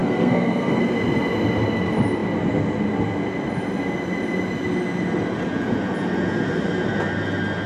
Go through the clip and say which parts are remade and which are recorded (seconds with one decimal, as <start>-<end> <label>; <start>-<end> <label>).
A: 0.0-0.8 remade; 0.8-7.7 recorded